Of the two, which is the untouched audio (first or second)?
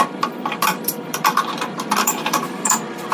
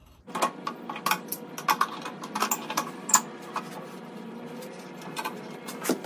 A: second